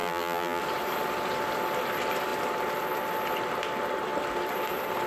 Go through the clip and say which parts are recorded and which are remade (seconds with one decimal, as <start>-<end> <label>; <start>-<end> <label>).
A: 0.0-0.6 remade; 0.6-5.1 recorded